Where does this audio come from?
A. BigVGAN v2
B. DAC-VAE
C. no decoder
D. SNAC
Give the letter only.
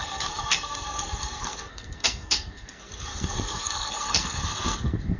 D